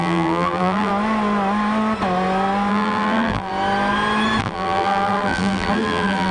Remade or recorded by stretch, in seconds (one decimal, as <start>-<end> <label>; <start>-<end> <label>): 0.0-0.9 remade; 0.9-2.7 recorded; 2.7-3.5 remade; 3.5-4.4 recorded; 4.4-6.3 remade